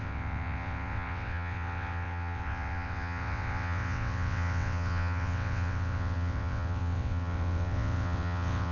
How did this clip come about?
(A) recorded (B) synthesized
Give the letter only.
B